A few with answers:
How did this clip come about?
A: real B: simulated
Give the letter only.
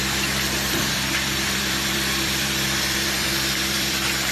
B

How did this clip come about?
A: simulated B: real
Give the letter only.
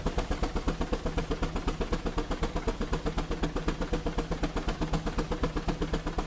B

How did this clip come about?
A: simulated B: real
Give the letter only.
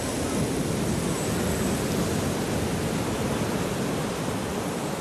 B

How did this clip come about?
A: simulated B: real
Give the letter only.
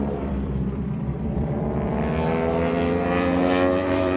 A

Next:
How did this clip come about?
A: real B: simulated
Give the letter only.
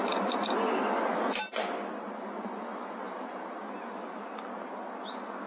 B